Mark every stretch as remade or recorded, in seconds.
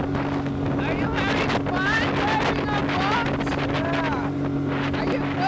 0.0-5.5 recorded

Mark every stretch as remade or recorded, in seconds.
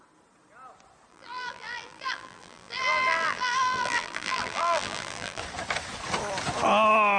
0.0-1.1 recorded; 1.1-5.4 remade; 5.4-7.2 recorded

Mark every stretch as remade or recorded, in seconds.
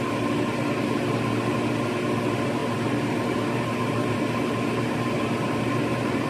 0.0-2.6 recorded; 2.6-6.3 remade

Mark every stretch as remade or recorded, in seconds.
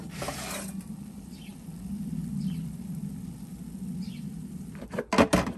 0.0-5.6 recorded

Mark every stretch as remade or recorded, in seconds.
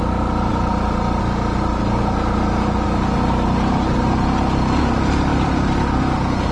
0.0-5.3 recorded; 5.3-6.1 remade; 6.1-6.5 recorded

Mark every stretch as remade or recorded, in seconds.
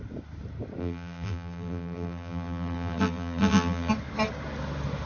0.0-0.8 recorded; 0.8-3.9 remade; 3.9-5.1 recorded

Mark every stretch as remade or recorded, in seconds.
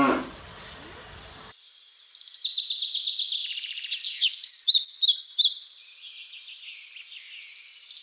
0.0-3.4 remade; 3.4-4.5 recorded; 4.5-6.3 remade; 6.3-8.0 recorded